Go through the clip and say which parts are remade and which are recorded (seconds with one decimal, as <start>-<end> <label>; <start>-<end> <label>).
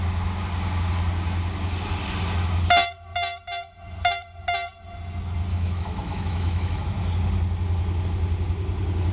0.0-5.5 recorded; 5.5-6.8 remade; 6.8-9.1 recorded